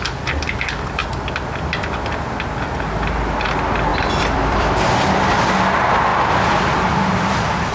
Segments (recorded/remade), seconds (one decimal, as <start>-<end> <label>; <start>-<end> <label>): 0.0-3.9 recorded; 3.9-4.9 remade; 4.9-6.1 recorded; 6.1-7.7 remade